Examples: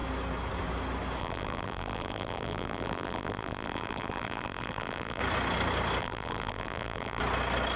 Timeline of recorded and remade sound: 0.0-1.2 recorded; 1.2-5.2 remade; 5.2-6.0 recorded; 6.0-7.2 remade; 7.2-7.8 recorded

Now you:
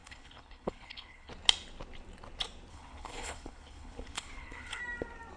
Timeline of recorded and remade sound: 0.0-1.3 remade; 1.3-2.7 recorded; 2.7-4.8 remade; 4.8-5.4 recorded

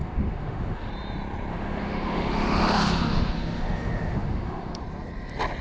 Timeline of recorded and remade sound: 0.0-0.9 remade; 0.9-1.5 recorded; 1.5-4.8 remade; 4.8-5.6 recorded

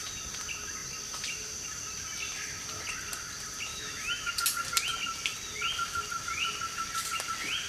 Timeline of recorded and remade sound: 0.0-3.7 recorded; 3.7-4.3 remade; 4.3-7.7 recorded

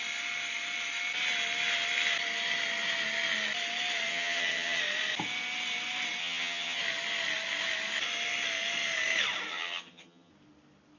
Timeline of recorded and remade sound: 0.0-4.1 recorded; 4.1-4.8 remade; 4.8-6.2 recorded; 6.2-6.8 remade; 6.8-9.5 recorded; 9.5-10.3 remade; 10.3-11.0 recorded

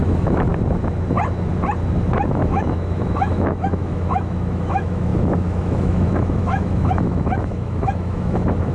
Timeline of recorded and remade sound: 0.0-0.5 remade; 0.5-2.3 recorded; 2.3-8.7 remade

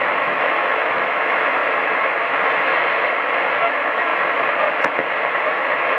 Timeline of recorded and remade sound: 0.0-1.6 remade; 1.6-3.6 recorded; 3.6-4.1 remade; 4.1-5.4 recorded; 5.4-6.0 remade

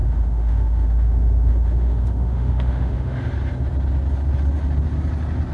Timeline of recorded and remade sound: 0.0-3.3 remade; 3.3-5.5 recorded